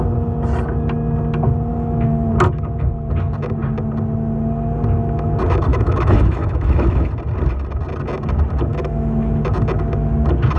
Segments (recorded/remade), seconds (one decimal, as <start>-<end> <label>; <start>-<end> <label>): 0.0-1.7 recorded; 1.7-2.3 remade; 2.3-5.7 recorded; 5.7-7.1 remade; 7.1-8.7 recorded; 8.7-9.4 remade; 9.4-10.6 recorded